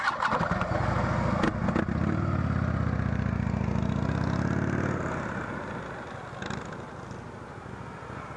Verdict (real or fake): real